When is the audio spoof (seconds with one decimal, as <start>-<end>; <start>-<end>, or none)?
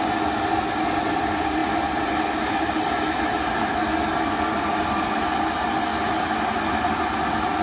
none